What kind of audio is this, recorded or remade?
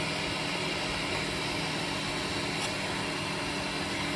recorded